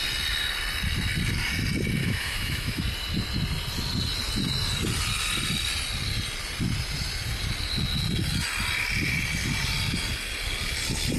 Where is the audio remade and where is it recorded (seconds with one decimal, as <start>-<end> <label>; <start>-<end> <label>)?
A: 0.0-2.0 recorded; 2.0-2.8 remade; 2.8-11.2 recorded